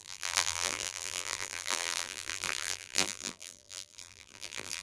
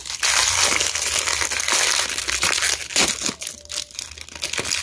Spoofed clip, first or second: first